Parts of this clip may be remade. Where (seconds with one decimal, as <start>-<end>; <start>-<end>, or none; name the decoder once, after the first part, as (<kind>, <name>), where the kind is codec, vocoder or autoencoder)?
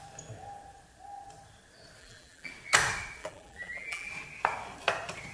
2.0-2.5 (vocoder, BigVGAN v2); 3.2-4.1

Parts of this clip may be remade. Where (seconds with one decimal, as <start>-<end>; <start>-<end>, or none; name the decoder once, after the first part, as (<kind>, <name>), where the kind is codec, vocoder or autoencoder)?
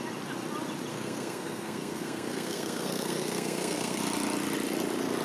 0.9-4.0 (codec, SNAC)